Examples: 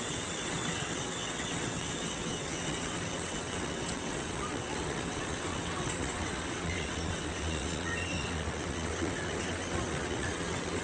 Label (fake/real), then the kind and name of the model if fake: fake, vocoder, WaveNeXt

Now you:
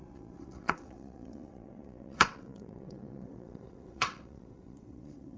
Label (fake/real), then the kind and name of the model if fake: fake, vocoder, WaveNeXt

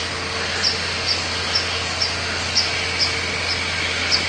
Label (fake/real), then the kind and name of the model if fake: real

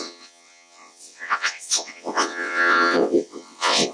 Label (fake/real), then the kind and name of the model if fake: fake, vocoder, WaveNeXt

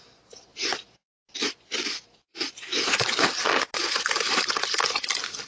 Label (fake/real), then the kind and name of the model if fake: real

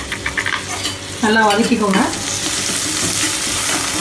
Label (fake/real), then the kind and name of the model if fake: real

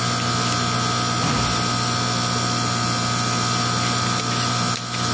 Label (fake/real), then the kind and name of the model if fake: real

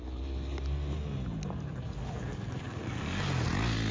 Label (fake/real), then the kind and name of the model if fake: real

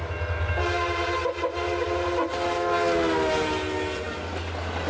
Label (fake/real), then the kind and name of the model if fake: real